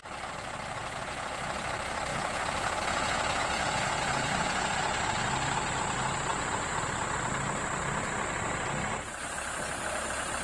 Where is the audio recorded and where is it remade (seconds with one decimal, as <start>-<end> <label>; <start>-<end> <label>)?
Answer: 0.0-0.8 recorded; 0.8-1.6 remade; 1.6-2.1 recorded; 2.1-4.7 remade; 4.7-6.3 recorded; 6.3-6.8 remade; 6.8-10.4 recorded